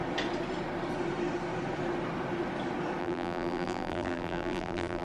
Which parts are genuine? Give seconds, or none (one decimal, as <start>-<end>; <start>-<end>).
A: 0.0-3.0